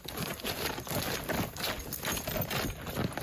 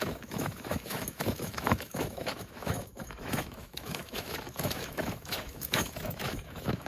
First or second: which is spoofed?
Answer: second